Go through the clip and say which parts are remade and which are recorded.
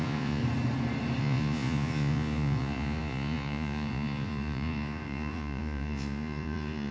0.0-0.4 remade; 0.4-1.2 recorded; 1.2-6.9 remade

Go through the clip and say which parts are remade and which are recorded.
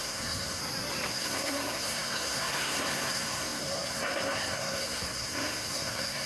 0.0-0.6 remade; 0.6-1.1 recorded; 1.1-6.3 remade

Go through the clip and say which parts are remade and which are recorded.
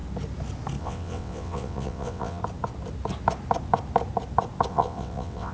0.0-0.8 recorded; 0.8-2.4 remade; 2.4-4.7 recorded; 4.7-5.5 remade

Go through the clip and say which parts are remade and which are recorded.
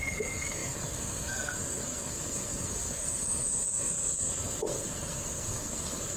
0.0-6.2 remade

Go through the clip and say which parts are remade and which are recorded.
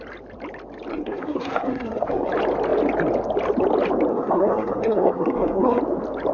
0.0-0.9 recorded; 0.9-2.3 remade; 2.3-4.1 recorded; 4.1-5.8 remade; 5.8-6.3 recorded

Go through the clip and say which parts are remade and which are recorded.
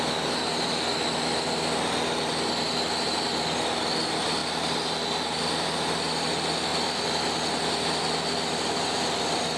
0.0-9.6 recorded